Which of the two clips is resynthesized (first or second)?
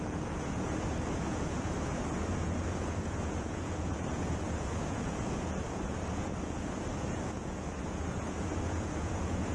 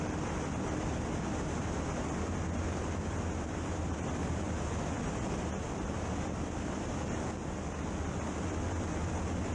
first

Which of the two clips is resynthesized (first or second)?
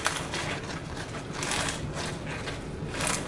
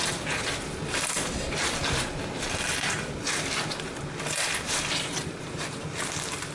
second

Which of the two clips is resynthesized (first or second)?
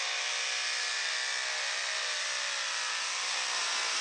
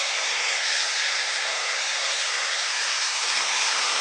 second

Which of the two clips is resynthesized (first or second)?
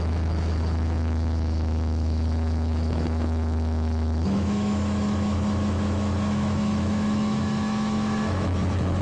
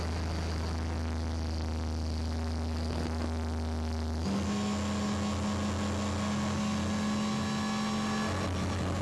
first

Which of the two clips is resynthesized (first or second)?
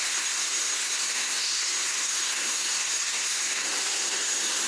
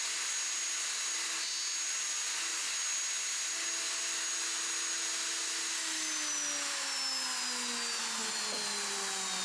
first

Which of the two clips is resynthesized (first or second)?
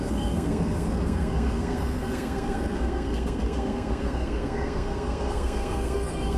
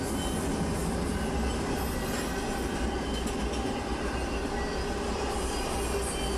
first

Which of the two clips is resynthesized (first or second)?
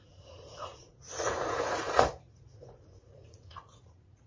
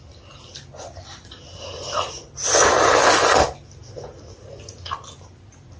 first